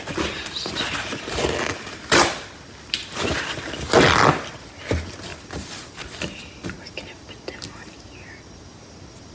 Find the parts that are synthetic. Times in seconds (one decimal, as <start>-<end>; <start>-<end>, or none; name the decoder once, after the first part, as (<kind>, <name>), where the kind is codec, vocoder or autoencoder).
none

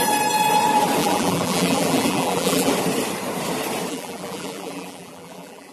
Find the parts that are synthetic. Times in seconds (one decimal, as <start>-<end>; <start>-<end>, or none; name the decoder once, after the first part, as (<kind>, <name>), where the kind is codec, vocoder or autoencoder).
1.0-2.7 (vocoder, BigVGAN v2); 3.9-5.7

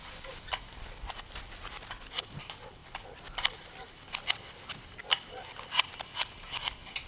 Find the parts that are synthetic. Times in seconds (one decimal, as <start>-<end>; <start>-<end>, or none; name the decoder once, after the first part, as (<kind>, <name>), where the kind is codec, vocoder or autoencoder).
none